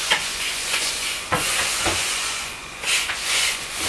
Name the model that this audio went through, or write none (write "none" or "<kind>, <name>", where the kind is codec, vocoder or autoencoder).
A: vocoder, Vocos